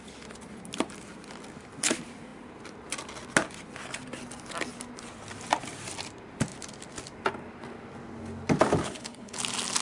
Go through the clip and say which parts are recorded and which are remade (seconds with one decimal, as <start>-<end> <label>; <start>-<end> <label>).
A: 0.0-8.8 recorded; 8.8-9.4 remade; 9.4-9.8 recorded